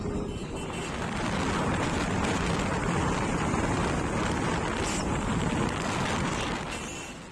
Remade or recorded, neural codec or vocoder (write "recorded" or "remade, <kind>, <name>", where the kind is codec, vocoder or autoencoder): recorded